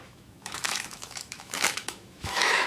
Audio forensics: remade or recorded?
remade